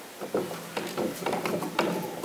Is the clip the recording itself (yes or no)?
yes